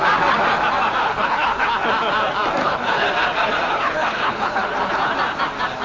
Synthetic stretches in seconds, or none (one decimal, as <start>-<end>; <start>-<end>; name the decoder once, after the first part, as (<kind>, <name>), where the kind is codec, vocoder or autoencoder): 1.0-1.7 (codec, HILCodec); 2.6-3.1; 3.7-4.7